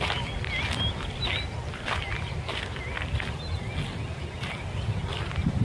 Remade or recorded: recorded